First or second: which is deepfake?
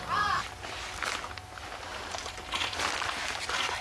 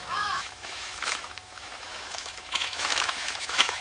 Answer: second